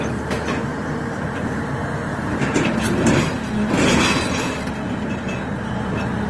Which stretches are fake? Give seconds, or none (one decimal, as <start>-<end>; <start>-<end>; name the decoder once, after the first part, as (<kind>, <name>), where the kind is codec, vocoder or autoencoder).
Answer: 0.7-1.5 (vocoder, BigVGAN v2); 2.1-3.2